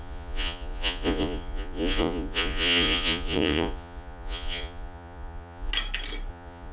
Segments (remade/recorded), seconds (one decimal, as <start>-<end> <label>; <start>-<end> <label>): 0.0-5.7 remade; 5.7-6.3 recorded; 6.3-6.7 remade